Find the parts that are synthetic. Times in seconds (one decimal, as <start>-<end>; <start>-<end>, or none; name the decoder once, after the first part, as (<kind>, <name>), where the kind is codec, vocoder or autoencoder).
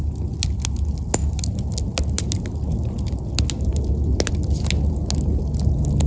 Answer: none